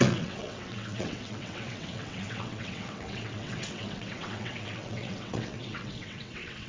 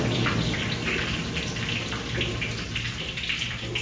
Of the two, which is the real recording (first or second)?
second